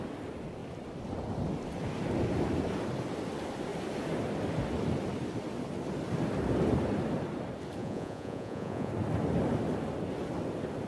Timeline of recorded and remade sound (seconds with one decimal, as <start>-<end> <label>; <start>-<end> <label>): 0.0-7.8 recorded; 7.8-8.9 remade; 8.9-10.9 recorded